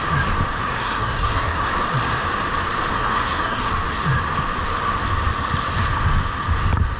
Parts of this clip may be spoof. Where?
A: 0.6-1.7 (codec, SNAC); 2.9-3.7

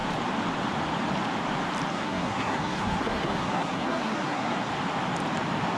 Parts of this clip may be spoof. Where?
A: 1.9-4.7 (codec, SNAC)